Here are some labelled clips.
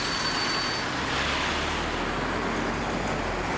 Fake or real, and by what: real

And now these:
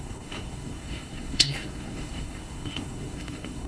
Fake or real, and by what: fake, codec, SNAC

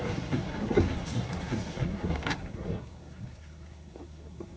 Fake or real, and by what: fake, codec, SNAC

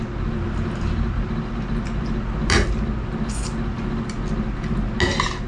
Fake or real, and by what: real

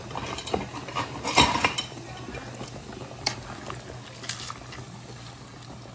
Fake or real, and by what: real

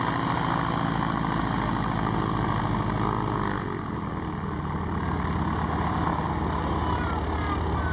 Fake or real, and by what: real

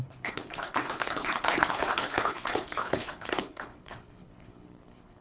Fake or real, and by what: fake, codec, HILCodec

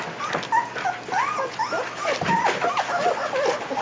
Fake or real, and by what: real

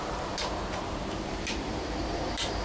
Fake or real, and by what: fake, vocoder, BigVGAN v2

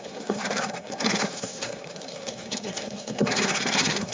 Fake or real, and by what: fake, codec, SNAC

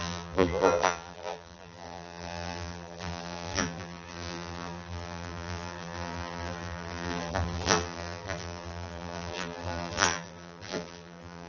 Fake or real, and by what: fake, vocoder, BigVGAN v2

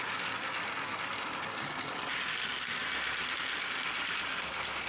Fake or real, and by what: real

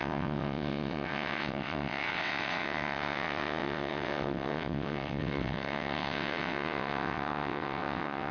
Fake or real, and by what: fake, vocoder, WaveNeXt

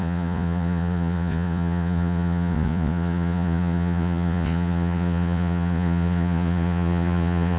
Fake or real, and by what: fake, vocoder, Vocos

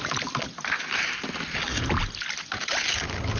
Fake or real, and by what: real